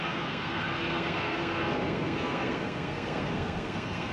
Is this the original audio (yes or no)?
no